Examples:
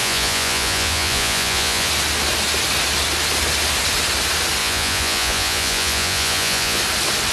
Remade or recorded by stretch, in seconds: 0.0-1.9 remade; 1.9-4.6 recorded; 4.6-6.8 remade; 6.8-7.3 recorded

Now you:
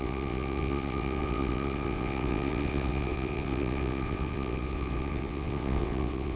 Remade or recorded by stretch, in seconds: 0.0-6.4 remade

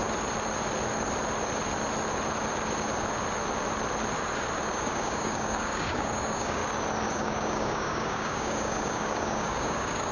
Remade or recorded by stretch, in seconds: 0.0-4.6 recorded; 4.6-6.6 remade; 6.6-7.1 recorded; 7.1-10.1 remade

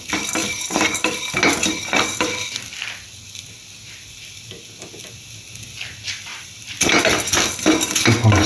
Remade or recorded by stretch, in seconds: 0.0-0.4 recorded; 0.4-1.2 remade; 1.2-6.3 recorded; 6.3-7.0 remade; 7.0-8.5 recorded

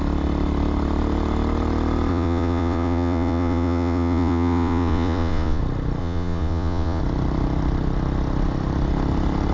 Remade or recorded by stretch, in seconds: 0.0-2.1 recorded; 2.1-5.6 remade; 5.6-6.0 recorded; 6.0-7.0 remade; 7.0-9.5 recorded

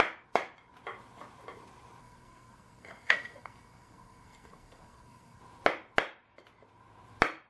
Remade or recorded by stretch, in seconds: 0.0-2.0 recorded; 2.0-5.4 remade; 5.4-7.5 recorded